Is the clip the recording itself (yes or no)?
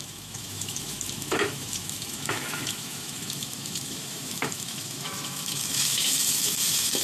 no